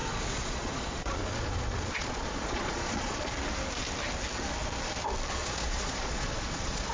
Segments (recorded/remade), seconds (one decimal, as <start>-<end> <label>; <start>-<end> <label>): 0.0-3.2 remade; 3.2-5.4 recorded; 5.4-6.9 remade